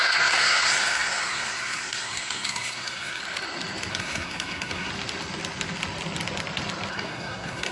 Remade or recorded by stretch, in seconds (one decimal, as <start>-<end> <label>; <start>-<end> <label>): 0.0-3.2 remade; 3.2-3.9 recorded; 3.9-4.9 remade; 4.9-6.9 recorded; 6.9-7.7 remade